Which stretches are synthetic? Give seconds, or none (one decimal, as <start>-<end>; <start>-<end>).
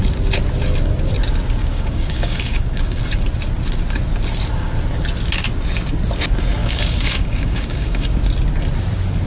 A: 1.6-3.0; 6.6-8.2